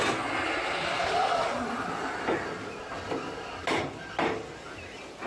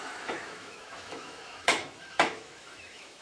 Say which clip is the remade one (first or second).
second